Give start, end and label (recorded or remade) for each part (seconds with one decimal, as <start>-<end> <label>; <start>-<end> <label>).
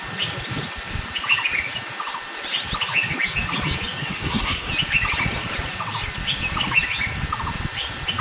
0.0-4.0 recorded; 4.0-4.7 remade; 4.7-8.2 recorded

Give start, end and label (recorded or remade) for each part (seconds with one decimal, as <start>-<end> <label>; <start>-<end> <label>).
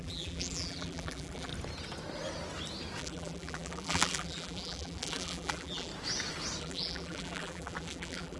0.0-1.5 remade; 1.5-3.0 recorded; 3.0-5.9 remade; 5.9-6.6 recorded; 6.6-8.4 remade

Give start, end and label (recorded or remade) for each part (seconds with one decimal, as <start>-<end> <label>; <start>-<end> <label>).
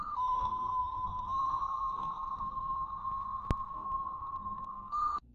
0.0-3.0 remade; 3.0-3.7 recorded; 3.7-5.3 remade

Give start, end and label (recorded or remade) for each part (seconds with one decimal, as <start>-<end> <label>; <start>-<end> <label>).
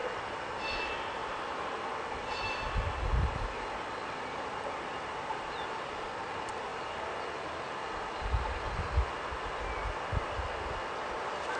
0.0-6.7 remade; 6.7-10.9 recorded; 10.9-11.6 remade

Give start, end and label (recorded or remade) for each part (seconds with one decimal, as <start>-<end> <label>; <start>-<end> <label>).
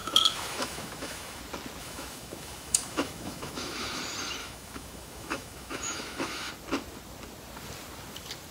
0.0-1.4 remade; 1.4-1.8 recorded; 1.8-4.0 remade; 4.0-4.4 recorded; 4.4-6.5 remade; 6.5-8.5 recorded